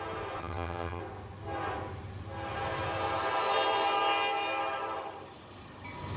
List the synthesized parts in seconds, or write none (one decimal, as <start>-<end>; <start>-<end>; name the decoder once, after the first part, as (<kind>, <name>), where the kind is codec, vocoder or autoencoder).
0.4-1.0 (vocoder, HiFi-GAN)